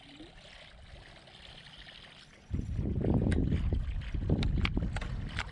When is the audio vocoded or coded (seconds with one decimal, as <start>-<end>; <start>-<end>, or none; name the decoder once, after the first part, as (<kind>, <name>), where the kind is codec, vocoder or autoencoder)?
none